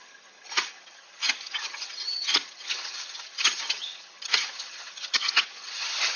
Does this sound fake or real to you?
fake